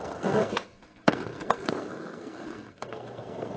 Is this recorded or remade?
remade